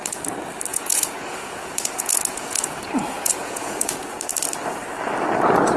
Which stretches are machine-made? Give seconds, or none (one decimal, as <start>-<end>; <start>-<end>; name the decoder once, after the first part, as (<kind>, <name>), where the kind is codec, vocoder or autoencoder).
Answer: 0.7-4.2 (vocoder, Vocos)